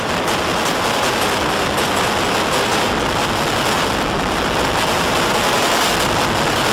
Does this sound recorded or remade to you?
recorded